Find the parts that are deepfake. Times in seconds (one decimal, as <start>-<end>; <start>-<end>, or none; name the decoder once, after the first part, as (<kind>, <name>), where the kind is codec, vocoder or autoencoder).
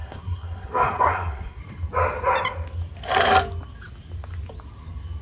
0.0-1.6 (codec, SNAC)